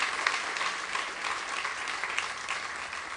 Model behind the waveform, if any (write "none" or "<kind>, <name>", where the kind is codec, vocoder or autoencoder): none